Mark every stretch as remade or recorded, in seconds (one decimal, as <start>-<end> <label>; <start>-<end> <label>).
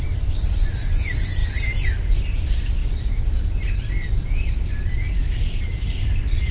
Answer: 0.0-6.5 recorded